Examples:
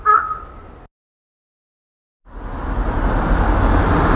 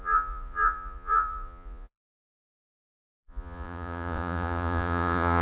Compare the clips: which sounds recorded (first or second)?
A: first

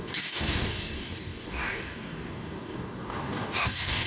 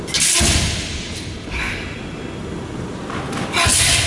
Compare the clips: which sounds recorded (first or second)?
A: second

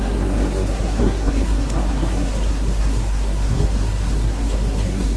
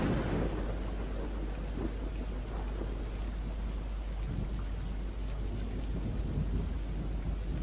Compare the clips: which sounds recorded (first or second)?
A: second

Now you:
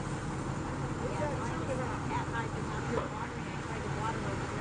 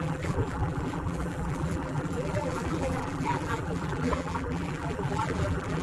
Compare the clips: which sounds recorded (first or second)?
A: first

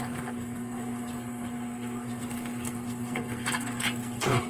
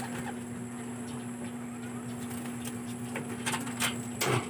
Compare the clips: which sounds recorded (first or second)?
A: second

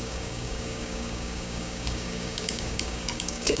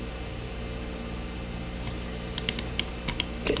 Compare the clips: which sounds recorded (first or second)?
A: second